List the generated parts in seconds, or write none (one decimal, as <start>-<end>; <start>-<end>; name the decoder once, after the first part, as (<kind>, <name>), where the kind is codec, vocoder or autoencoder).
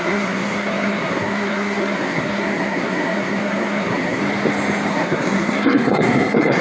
0.0-4.2 (codec, SNAC); 4.9-6.6